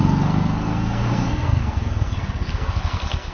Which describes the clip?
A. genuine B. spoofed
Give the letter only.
B